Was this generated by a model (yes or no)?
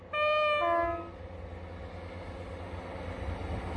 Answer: no